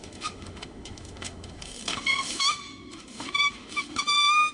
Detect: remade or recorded remade